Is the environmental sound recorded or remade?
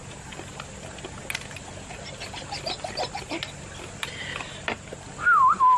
recorded